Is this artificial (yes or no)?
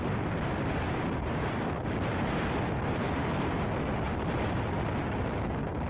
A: no